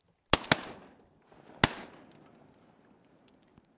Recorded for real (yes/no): yes